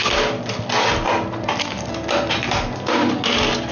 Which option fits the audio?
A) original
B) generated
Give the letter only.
A